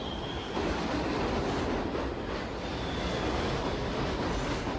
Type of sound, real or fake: real